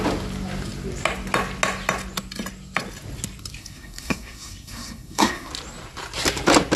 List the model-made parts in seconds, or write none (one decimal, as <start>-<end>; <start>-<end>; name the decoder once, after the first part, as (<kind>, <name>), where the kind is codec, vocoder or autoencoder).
3.6-5.5 (codec, SNAC)